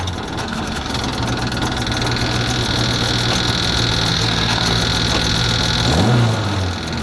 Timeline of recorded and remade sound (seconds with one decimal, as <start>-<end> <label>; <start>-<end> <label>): 0.0-0.4 recorded; 0.4-0.9 remade; 0.9-4.1 recorded; 4.1-4.8 remade; 4.8-7.0 recorded